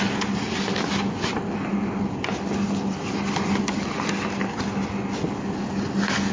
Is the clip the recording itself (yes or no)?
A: yes